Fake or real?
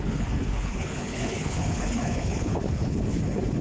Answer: fake